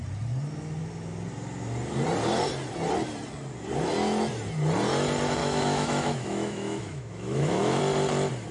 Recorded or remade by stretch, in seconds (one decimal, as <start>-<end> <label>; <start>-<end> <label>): 0.0-5.4 recorded; 5.4-7.8 remade; 7.8-8.5 recorded

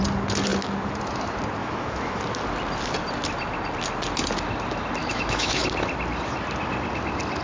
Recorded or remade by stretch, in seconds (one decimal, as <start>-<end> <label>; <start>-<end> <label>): 0.0-1.6 recorded; 1.6-2.2 remade; 2.2-5.0 recorded; 5.0-5.6 remade; 5.6-7.4 recorded